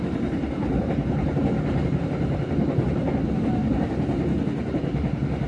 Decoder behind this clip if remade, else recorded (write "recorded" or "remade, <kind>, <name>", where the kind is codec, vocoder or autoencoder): recorded